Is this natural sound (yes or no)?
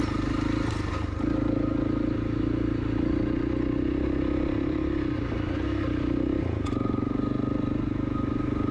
yes